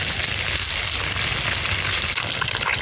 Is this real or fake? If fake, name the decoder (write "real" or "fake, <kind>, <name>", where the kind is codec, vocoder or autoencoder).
real